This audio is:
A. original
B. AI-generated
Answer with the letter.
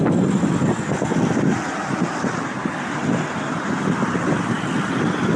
A